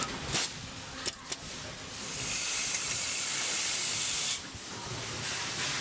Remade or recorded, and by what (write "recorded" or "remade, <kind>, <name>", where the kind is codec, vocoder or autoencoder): recorded